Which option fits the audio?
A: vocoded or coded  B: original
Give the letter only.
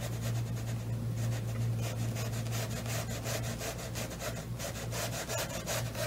B